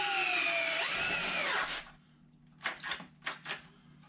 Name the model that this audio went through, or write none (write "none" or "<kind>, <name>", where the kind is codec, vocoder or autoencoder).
none